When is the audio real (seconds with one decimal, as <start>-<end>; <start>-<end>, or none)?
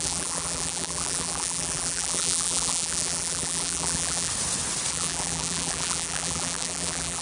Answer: 4.3-4.9